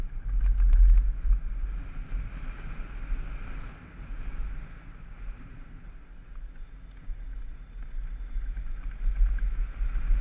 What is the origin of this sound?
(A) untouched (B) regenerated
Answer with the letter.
A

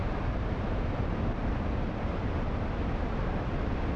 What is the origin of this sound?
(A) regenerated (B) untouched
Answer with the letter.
B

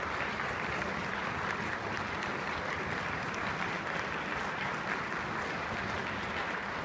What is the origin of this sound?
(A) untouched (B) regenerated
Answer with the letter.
A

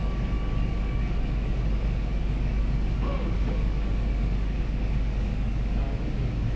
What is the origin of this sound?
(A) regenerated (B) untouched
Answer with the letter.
A